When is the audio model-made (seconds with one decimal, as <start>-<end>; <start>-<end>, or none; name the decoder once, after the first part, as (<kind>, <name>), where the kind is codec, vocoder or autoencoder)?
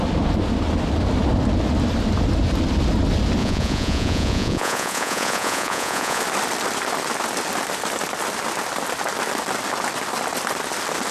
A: 3.4-6.2 (vocoder, Vocos)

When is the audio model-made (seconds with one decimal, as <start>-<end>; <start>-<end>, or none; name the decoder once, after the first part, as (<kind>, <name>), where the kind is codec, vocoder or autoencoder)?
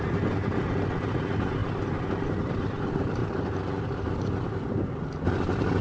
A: 0.0-3.2 (vocoder, BigVGAN v2); 4.5-5.8